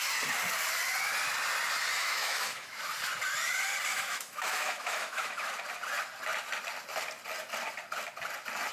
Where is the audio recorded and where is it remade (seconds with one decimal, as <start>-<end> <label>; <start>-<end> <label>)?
0.0-2.0 recorded; 2.0-2.8 remade; 2.8-3.9 recorded; 3.9-5.5 remade; 5.5-8.7 recorded

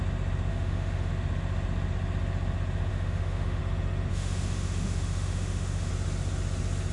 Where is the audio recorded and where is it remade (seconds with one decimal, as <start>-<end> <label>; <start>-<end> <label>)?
0.0-0.5 recorded; 0.5-1.1 remade; 1.1-2.9 recorded; 2.9-3.6 remade; 3.6-4.1 recorded; 4.1-5.9 remade; 5.9-6.9 recorded

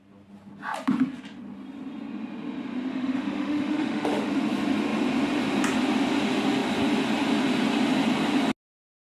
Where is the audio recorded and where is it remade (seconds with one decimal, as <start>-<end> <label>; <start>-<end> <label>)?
0.0-2.9 recorded; 2.9-4.3 remade; 4.3-9.0 recorded

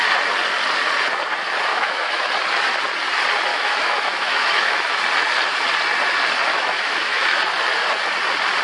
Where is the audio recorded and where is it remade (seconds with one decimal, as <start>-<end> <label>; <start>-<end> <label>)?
0.0-1.7 recorded; 1.7-2.3 remade; 2.3-3.5 recorded; 3.5-5.0 remade; 5.0-6.5 recorded; 6.5-7.4 remade; 7.4-8.6 recorded

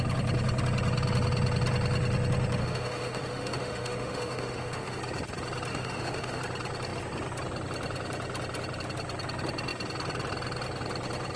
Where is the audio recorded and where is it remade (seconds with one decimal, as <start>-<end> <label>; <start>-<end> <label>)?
0.0-2.6 recorded; 2.6-5.0 remade; 5.0-5.7 recorded; 5.7-6.4 remade; 6.4-11.4 recorded

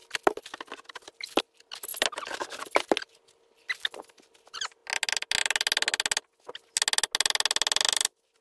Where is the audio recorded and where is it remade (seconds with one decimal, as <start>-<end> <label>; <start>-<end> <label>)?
0.0-8.4 recorded

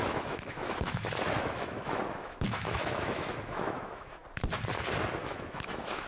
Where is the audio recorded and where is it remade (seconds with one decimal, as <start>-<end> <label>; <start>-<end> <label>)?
0.0-4.2 remade; 4.2-5.2 recorded; 5.2-6.1 remade

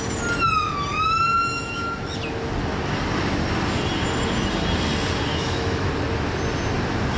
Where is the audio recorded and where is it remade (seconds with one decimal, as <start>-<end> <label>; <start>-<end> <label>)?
0.0-0.9 recorded; 0.9-2.0 remade; 2.0-5.3 recorded; 5.3-5.9 remade; 5.9-7.2 recorded